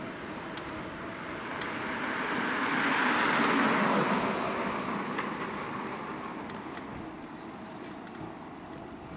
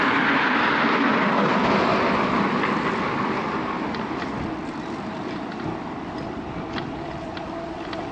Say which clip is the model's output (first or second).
second